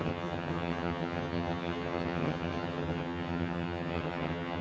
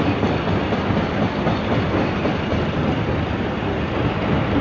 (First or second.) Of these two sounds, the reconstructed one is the first